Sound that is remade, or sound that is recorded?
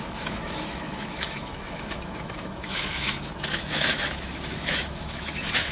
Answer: remade